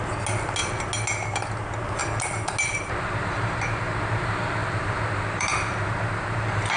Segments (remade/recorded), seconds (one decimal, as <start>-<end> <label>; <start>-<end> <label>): 0.0-4.6 recorded; 4.6-6.8 remade